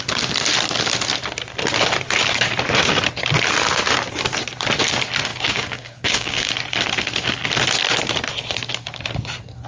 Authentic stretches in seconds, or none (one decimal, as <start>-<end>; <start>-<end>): 0.0-5.3; 6.5-9.7